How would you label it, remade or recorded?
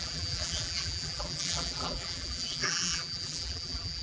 remade